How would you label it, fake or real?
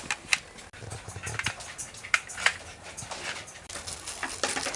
real